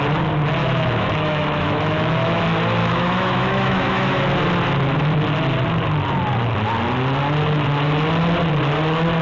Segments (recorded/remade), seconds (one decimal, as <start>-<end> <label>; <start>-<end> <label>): 0.0-0.6 recorded; 0.6-2.4 remade; 2.4-2.8 recorded; 2.8-4.2 remade; 4.2-9.2 recorded